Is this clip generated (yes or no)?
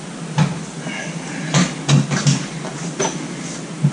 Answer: no